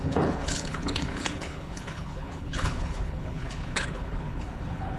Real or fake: fake